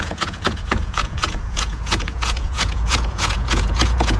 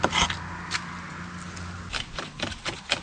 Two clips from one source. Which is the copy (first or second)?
first